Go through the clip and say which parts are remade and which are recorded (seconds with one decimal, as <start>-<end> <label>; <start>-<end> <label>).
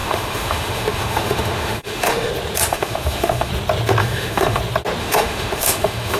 0.0-2.3 remade; 2.3-2.7 recorded; 2.7-3.5 remade; 3.5-4.0 recorded; 4.0-4.6 remade; 4.6-5.0 recorded; 5.0-6.2 remade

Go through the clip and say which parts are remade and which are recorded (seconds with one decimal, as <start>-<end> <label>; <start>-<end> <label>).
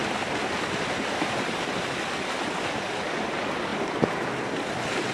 0.0-2.8 remade; 2.8-3.7 recorded; 3.7-4.3 remade; 4.3-5.1 recorded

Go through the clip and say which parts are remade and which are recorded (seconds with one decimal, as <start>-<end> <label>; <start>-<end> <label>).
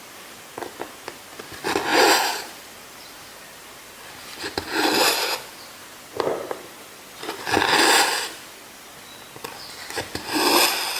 0.0-1.9 recorded; 1.9-4.5 remade; 4.5-11.0 recorded